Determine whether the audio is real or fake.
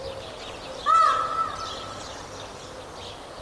real